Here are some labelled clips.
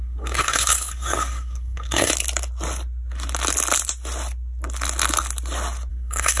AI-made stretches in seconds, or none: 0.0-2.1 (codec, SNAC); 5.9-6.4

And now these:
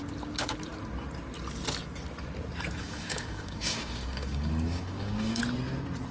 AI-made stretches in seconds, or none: 2.8-5.4 (codec, DAC)

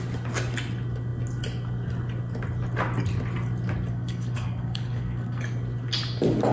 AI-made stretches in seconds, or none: 3.9-5.4 (codec, SNAC)

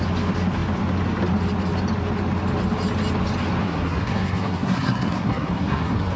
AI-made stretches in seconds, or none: 3.6-6.2 (codec, SNAC)

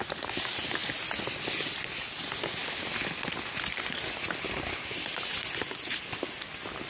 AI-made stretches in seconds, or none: none

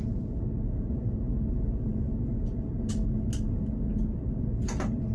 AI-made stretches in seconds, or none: none

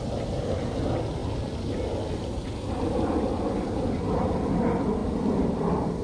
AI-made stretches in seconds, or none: none